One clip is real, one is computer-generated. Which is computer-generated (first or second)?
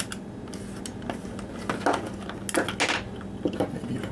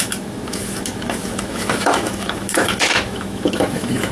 second